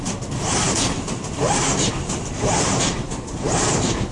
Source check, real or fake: real